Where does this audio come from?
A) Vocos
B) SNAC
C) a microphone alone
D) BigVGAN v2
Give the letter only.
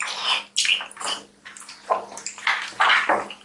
C